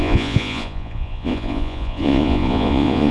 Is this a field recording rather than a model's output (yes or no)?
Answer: no